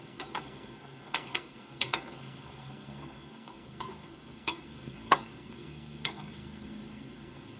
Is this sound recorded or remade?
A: remade